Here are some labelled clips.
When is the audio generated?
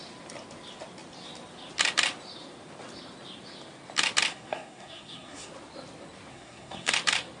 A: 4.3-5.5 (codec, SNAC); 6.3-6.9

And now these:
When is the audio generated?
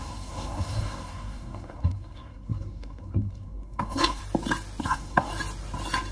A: 0.0-4.2 (codec, SNAC); 4.8-5.3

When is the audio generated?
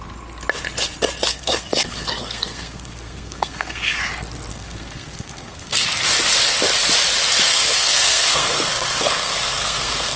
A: 1.3-4.0 (codec, SNAC); 4.5-6.0; 7.5-10.2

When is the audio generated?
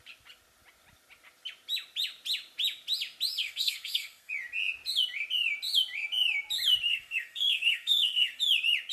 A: 3.4-4.3 (codec, SNAC); 6.9-8.4